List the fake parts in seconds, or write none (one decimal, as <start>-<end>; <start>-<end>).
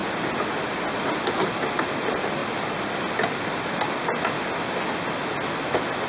none